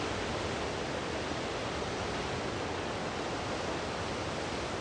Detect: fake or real real